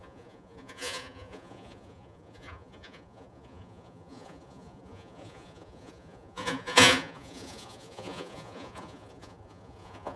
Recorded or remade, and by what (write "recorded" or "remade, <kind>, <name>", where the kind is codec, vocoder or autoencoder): remade, vocoder, Vocos